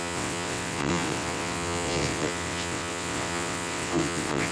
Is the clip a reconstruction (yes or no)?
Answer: yes